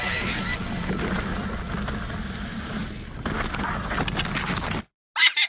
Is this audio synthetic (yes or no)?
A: no